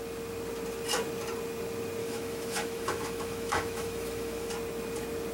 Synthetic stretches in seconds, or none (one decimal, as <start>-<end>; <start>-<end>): 2.0-4.5